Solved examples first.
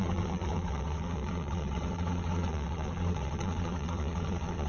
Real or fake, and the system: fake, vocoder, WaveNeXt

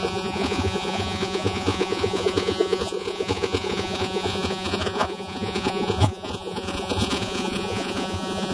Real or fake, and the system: fake, vocoder, Vocos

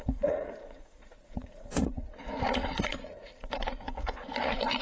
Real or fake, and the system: fake, vocoder, Vocos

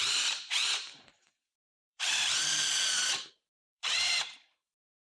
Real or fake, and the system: fake, vocoder, BigVGAN v2